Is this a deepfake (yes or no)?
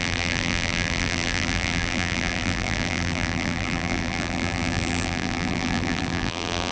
yes